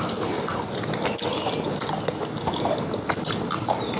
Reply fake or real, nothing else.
real